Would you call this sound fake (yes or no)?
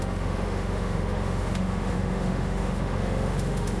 yes